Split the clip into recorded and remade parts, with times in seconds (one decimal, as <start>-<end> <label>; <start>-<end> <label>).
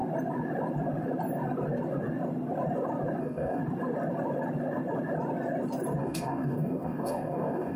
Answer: 0.0-3.2 recorded; 3.2-3.6 remade; 3.6-6.0 recorded; 6.0-7.8 remade